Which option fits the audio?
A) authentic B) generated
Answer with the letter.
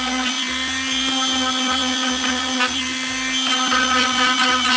A